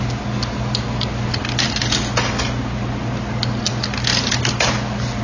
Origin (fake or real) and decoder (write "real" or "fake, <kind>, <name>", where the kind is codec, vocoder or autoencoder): real